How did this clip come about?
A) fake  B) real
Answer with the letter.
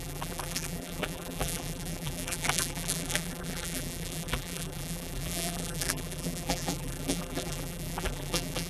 A